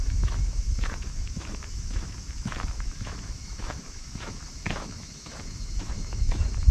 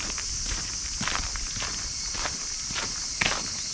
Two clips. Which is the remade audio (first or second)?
first